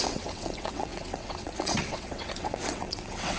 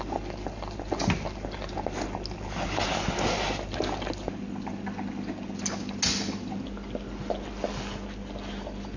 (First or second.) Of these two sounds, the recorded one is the second